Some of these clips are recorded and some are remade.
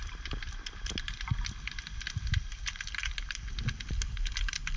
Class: recorded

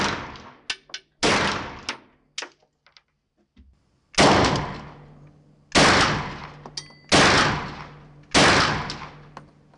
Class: recorded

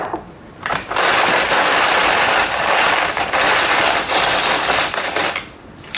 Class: recorded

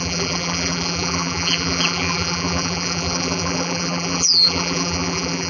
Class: remade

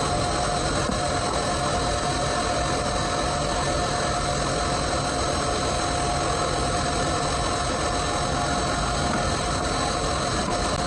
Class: recorded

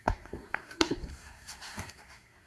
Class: remade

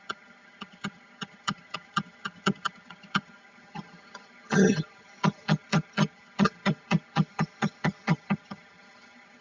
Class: remade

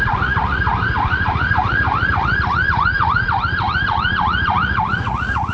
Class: remade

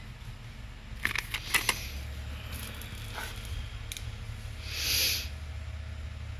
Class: recorded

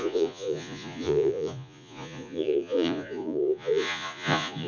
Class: remade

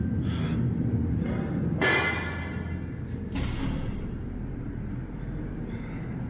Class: recorded